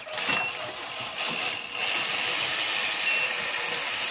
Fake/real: real